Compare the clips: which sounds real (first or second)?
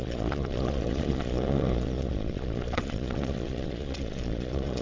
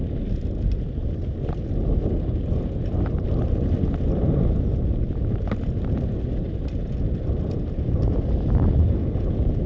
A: second